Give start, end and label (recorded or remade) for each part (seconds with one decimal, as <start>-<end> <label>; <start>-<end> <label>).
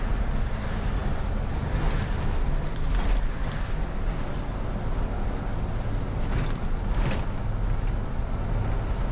0.0-1.0 recorded; 1.0-3.1 remade; 3.1-9.1 recorded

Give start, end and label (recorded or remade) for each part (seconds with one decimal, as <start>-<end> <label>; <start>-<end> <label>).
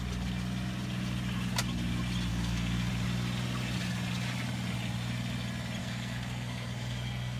0.0-2.3 recorded; 2.3-2.9 remade; 2.9-5.8 recorded; 5.8-7.4 remade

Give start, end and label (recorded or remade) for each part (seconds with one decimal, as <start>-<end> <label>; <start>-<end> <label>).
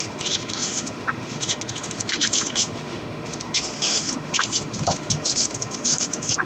0.0-6.5 remade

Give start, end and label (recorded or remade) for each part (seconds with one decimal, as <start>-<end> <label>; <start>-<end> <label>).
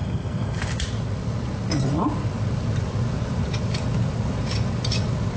0.0-0.6 remade; 0.6-5.4 recorded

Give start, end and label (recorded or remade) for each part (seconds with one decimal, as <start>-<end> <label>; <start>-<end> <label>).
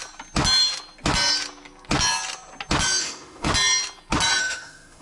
0.0-3.0 recorded; 3.0-3.5 remade; 3.5-4.4 recorded; 4.4-5.0 remade